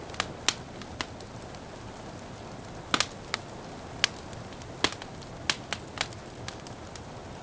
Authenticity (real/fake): real